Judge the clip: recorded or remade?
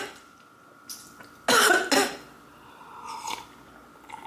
recorded